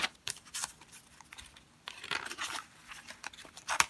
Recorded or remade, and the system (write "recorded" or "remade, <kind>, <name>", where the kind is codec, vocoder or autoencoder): remade, vocoder, BigVGAN v2